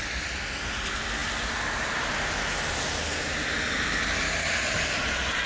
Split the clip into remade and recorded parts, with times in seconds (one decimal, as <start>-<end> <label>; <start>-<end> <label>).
0.0-5.5 recorded